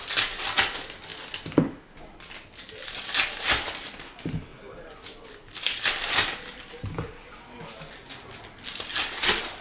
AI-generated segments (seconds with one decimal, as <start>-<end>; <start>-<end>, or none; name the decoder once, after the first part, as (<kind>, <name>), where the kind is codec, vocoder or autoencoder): none